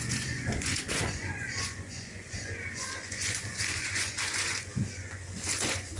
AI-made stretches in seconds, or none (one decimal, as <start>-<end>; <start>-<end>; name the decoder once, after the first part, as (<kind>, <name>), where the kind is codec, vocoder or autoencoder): 0.0-6.0 (vocoder, Vocos)